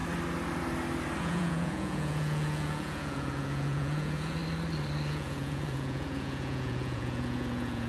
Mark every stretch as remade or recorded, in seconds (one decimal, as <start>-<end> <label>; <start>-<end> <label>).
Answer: 0.0-1.2 recorded; 1.2-4.4 remade; 4.4-5.1 recorded; 5.1-7.9 remade